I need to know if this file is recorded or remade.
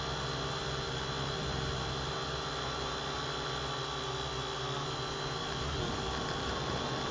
recorded